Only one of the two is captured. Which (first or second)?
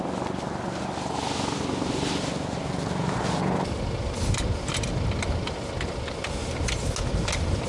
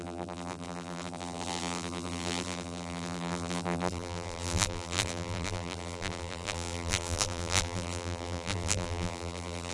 first